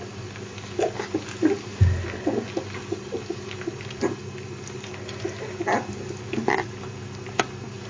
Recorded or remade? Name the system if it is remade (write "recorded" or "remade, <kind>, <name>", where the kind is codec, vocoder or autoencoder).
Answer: recorded